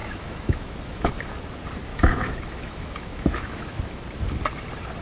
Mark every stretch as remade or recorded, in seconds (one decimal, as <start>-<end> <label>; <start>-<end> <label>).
0.0-1.1 remade; 1.1-1.9 recorded; 1.9-3.8 remade; 3.8-5.0 recorded